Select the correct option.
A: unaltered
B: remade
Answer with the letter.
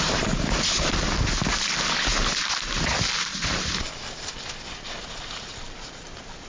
A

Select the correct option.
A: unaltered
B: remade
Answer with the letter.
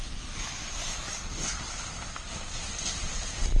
A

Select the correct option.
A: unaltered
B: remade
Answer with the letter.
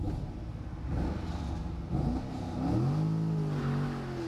A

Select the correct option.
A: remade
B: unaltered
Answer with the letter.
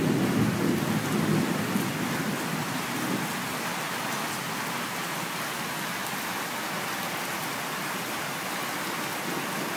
B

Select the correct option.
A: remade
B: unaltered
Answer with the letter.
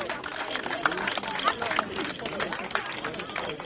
B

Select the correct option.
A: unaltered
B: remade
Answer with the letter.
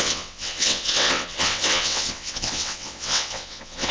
B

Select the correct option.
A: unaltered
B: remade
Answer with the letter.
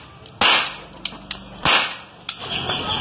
A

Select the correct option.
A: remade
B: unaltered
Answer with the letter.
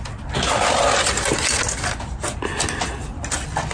B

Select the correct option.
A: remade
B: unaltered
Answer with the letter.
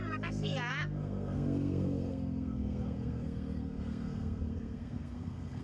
A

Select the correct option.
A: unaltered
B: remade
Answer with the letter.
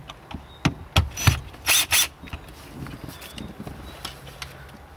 A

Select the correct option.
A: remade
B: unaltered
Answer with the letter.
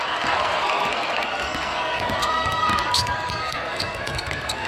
A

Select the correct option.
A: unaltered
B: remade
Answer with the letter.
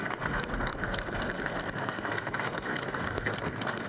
B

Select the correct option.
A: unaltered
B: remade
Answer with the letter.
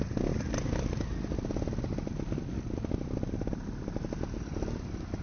A